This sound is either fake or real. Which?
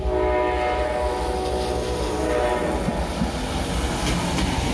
real